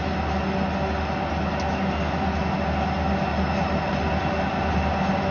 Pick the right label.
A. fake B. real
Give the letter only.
B